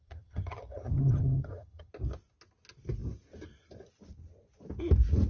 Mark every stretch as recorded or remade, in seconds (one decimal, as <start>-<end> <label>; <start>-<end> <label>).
0.0-1.9 remade; 1.9-5.3 recorded